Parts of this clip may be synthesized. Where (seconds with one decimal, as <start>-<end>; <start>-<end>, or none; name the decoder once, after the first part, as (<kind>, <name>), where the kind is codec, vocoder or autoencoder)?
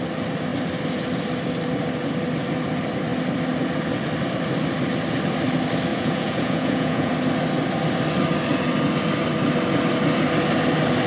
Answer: 5.9-7.1 (vocoder, Vocos)